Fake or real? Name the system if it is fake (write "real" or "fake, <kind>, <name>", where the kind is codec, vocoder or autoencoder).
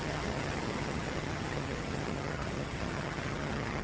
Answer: fake, vocoder, HiFi-GAN